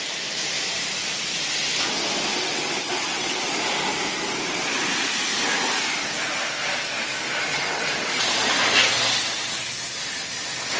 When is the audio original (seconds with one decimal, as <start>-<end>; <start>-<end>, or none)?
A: 0.0-2.3; 3.5-7.5; 8.3-10.8